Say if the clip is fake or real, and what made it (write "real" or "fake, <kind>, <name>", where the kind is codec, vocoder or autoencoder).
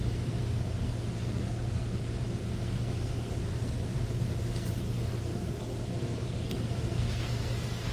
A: fake, codec, SNAC